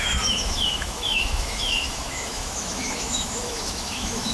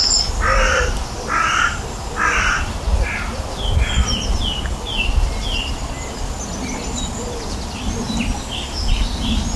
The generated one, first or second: first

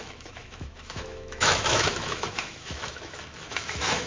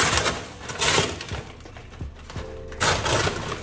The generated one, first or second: first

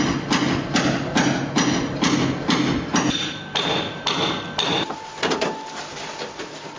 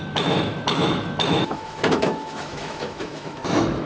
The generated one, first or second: second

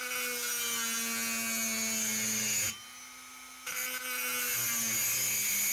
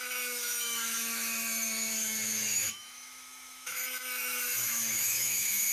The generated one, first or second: second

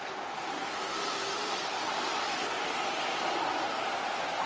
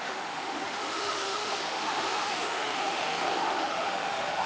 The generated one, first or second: second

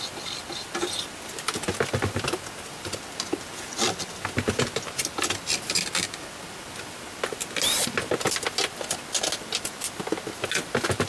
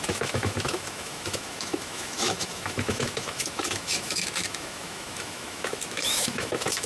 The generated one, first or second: second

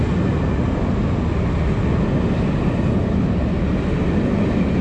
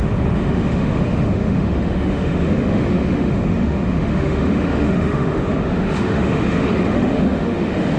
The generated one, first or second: second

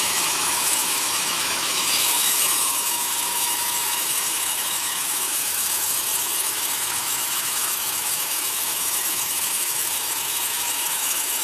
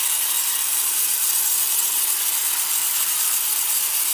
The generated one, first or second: first